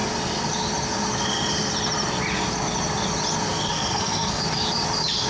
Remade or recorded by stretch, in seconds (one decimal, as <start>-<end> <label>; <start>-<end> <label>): 0.0-3.7 recorded; 3.7-4.4 remade; 4.4-5.3 recorded